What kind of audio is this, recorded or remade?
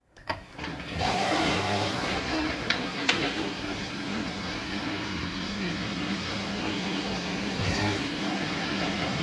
remade